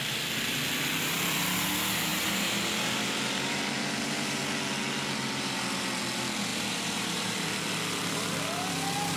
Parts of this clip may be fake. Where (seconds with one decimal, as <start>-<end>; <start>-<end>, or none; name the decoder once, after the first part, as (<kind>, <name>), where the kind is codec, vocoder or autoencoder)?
2.1-4.4 (vocoder, BigVGAN v2); 6.5-9.2

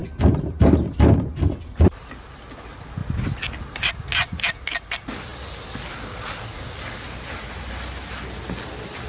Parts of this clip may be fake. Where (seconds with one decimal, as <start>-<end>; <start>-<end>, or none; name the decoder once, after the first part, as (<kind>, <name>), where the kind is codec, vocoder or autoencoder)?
none